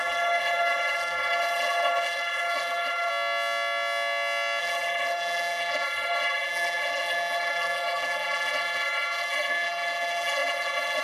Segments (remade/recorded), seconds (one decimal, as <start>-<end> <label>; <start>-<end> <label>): 0.0-3.1 remade; 3.1-4.6 recorded; 4.6-11.0 remade